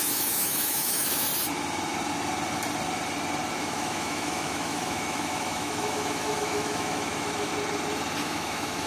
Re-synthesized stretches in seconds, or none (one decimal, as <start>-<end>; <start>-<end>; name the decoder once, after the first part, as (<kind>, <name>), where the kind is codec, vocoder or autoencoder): 0.0-1.3 (autoencoder, DAC-VAE); 3.6-7.5; 8.2-8.9